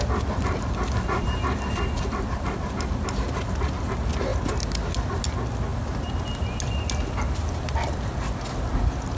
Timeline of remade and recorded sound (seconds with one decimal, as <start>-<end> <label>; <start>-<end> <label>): 0.0-9.2 recorded